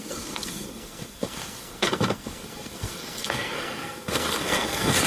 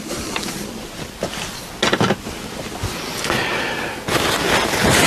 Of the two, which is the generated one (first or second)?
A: first